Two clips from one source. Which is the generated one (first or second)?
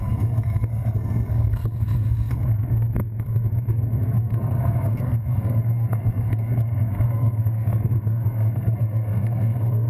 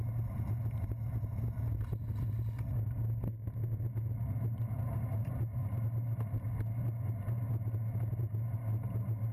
first